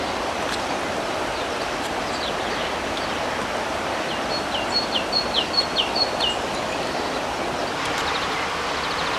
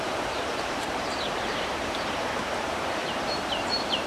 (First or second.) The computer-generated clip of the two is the second